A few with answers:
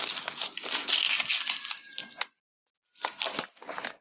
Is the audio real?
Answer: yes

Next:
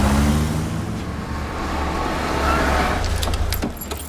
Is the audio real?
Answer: yes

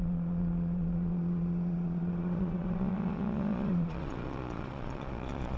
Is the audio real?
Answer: no